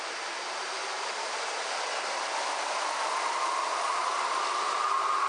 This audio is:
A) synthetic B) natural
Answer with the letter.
B